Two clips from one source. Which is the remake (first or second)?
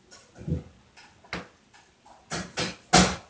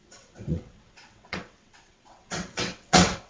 second